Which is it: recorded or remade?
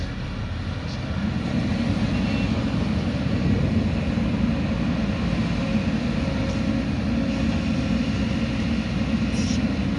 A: recorded